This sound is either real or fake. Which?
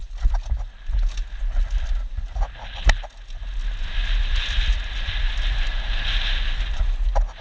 real